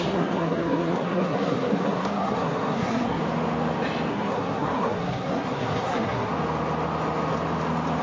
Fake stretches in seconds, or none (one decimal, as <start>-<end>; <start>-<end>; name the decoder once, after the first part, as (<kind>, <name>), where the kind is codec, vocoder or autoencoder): 0.0-3.2 (codec, SNAC); 4.1-6.3